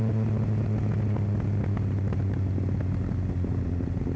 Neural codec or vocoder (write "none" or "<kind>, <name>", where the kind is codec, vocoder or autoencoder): none